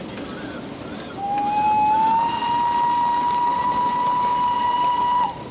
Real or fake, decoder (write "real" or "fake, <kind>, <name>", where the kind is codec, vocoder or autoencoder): real